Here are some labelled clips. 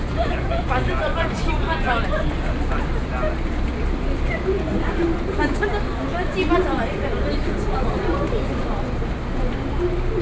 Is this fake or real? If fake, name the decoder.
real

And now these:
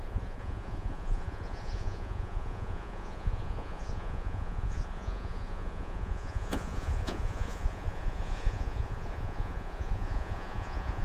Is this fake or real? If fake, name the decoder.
fake, vocoder, Vocos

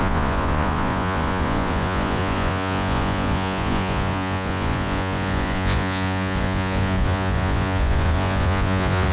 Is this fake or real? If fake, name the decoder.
fake, vocoder, Vocos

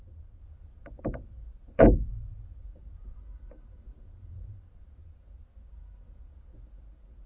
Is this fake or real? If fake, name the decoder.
fake, vocoder, Vocos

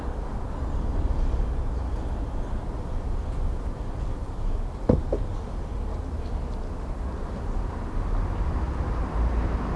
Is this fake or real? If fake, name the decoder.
real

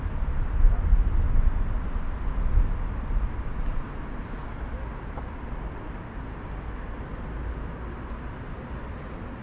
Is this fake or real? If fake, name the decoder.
real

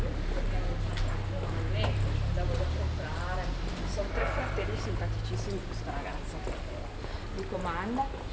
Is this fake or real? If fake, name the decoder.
real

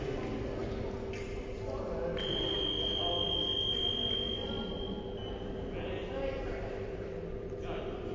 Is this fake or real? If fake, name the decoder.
real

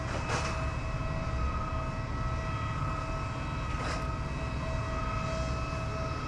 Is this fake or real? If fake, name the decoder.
real